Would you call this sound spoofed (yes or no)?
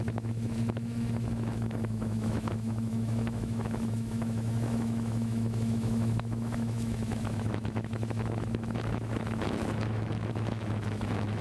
yes